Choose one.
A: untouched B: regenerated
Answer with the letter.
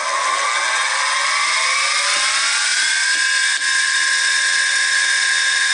A